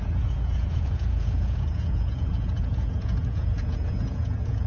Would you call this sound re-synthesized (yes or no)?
yes